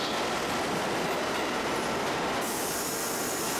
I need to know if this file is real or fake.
real